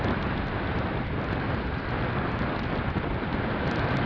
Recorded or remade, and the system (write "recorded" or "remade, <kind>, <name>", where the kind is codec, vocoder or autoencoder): recorded